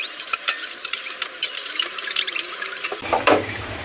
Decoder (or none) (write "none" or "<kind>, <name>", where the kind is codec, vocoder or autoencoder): vocoder, BigVGAN v2